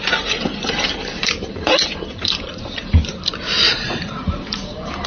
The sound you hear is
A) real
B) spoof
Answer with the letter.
B